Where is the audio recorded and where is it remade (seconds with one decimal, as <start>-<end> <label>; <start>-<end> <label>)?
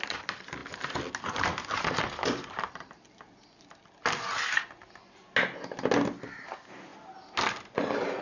0.0-8.2 recorded